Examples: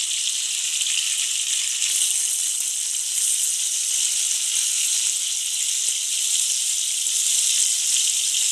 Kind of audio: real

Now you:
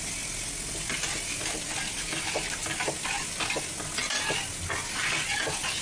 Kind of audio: real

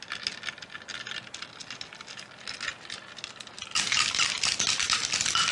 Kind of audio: real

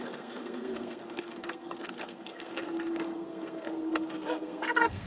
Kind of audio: fake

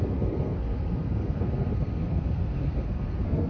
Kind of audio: fake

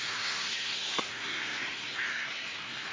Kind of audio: fake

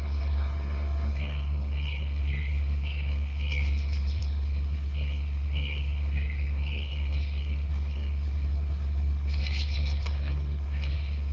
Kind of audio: fake